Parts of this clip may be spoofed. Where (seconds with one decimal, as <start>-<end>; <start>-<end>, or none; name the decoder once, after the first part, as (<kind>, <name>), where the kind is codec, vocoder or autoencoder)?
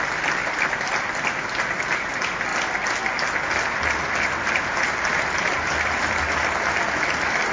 none